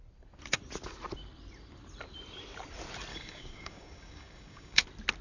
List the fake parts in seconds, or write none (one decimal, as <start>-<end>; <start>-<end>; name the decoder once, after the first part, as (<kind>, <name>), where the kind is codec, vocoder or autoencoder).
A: 3.1-4.8 (codec, DAC)